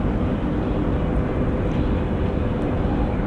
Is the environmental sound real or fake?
real